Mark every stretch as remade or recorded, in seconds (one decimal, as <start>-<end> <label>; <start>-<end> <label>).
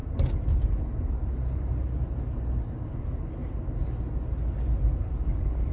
0.0-5.7 recorded